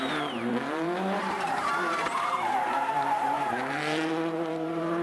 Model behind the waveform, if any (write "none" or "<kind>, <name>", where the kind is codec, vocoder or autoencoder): vocoder, BigVGAN v2